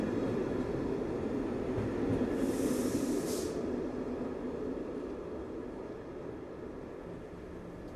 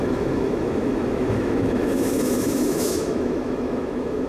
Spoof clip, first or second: second